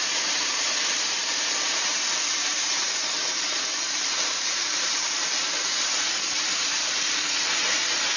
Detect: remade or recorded remade